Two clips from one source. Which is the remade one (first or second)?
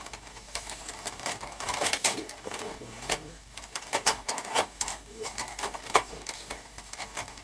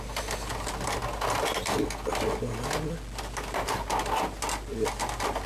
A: first